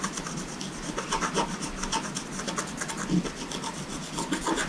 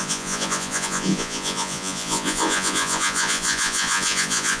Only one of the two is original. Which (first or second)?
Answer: first